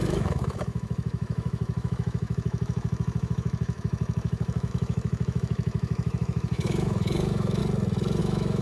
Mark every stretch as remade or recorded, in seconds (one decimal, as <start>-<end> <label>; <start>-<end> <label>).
0.0-7.6 remade; 7.6-8.2 recorded; 8.2-8.6 remade